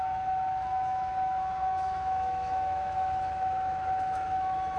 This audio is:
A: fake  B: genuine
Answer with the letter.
A